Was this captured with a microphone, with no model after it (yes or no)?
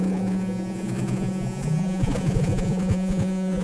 no